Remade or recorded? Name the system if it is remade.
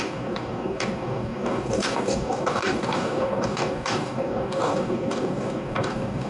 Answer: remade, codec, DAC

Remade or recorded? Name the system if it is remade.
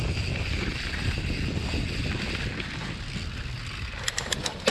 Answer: recorded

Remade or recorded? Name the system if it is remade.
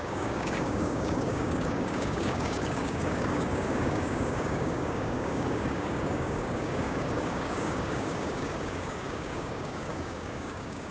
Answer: remade, codec, DAC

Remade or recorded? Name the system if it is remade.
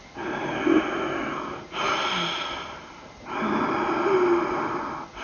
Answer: recorded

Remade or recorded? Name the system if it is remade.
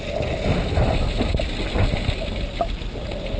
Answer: recorded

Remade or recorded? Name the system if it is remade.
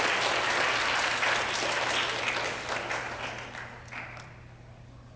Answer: recorded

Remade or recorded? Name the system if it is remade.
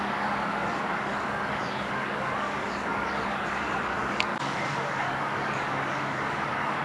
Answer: remade, codec, DAC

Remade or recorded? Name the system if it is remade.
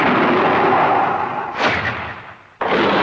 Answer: recorded